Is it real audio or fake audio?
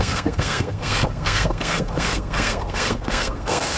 fake